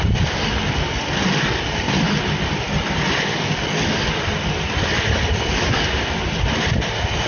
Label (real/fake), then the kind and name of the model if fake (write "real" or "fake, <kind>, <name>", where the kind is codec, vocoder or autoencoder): real